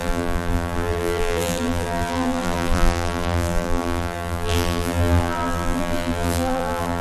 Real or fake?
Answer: fake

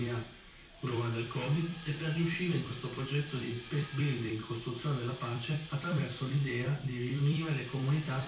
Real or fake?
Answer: fake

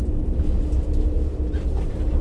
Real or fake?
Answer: real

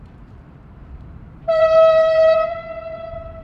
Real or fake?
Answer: fake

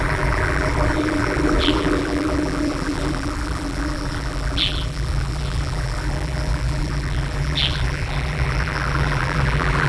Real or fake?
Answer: fake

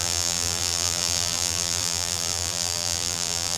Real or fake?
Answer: fake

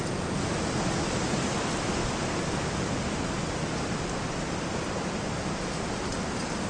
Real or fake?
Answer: real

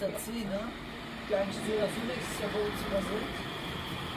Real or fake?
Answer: fake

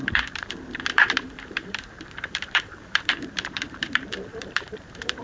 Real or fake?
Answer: fake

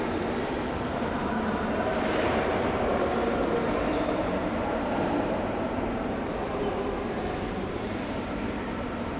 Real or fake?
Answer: fake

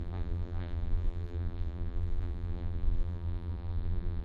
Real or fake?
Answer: fake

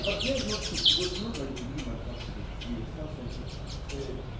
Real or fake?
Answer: real